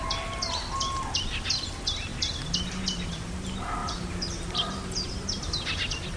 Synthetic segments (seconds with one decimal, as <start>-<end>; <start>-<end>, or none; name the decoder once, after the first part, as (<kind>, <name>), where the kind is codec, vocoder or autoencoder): 3.8-5.4 (vocoder, BigVGAN v2)